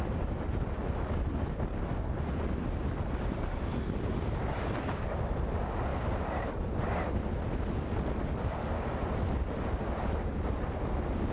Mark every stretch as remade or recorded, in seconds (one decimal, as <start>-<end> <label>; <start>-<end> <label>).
0.0-11.3 recorded